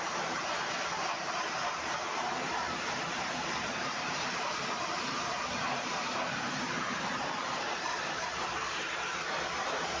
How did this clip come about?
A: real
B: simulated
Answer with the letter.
B